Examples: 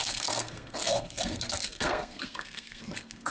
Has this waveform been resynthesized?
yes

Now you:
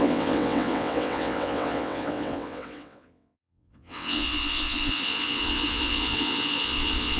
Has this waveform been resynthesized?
yes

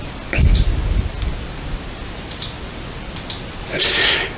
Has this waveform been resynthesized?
no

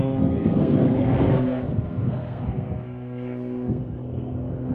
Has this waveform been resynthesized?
yes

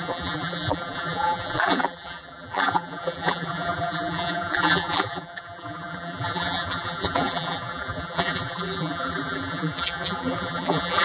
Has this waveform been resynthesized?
yes